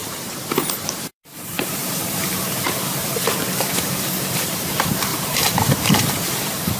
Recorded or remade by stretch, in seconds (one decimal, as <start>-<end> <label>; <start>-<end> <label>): 0.0-1.8 remade; 1.8-3.4 recorded; 3.4-6.8 remade